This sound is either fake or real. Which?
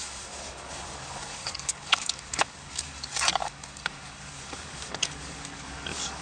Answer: fake